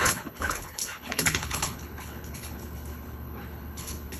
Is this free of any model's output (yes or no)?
no